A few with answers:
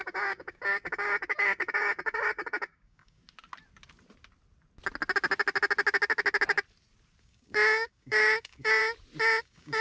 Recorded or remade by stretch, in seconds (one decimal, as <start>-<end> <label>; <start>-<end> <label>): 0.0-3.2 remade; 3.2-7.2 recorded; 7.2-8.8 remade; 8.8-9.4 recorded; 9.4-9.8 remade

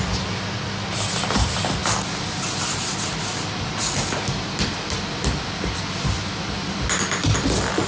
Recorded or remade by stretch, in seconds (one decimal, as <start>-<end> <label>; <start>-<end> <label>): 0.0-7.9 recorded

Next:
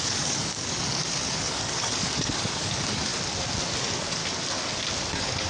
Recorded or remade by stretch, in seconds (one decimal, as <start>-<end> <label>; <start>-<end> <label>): 0.0-3.1 remade; 3.1-3.8 recorded; 3.8-4.2 remade; 4.2-5.1 recorded; 5.1-5.5 remade